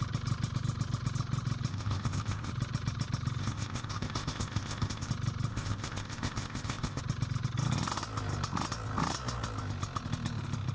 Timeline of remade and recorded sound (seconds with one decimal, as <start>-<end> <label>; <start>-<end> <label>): 0.0-1.7 recorded; 1.7-2.5 remade; 2.5-3.4 recorded; 3.4-5.1 remade; 5.1-5.5 recorded; 5.5-7.0 remade; 7.0-10.7 recorded